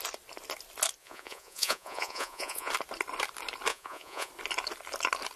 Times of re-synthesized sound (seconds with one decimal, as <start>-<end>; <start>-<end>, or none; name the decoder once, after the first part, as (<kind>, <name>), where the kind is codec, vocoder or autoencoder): 1.0-2.7 (vocoder, Vocos); 3.7-4.3